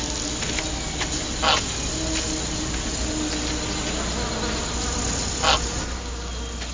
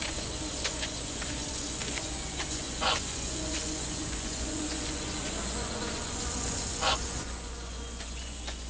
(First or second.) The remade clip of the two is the second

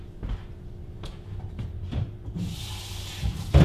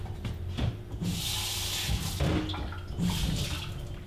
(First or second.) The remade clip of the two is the first